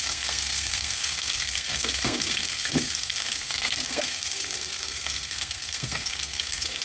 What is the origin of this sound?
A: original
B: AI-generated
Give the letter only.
B